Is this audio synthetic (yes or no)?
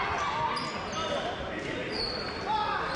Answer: no